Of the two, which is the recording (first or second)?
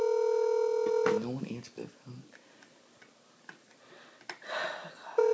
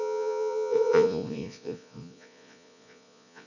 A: first